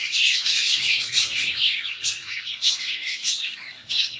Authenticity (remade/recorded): remade